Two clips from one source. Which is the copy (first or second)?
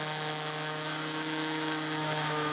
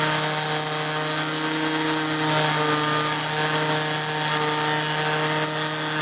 first